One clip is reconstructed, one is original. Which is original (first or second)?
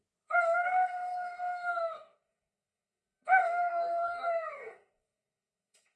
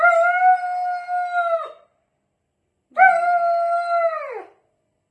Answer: second